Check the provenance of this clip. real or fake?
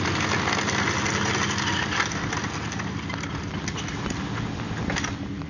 real